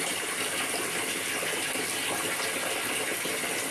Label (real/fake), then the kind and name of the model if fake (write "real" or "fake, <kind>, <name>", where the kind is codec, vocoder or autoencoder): real